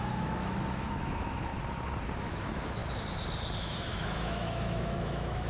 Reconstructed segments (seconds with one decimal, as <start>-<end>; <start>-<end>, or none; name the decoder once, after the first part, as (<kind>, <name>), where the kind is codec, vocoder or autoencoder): 0.0-1.5 (autoencoder, DAC-VAE); 2.2-2.8; 3.6-5.5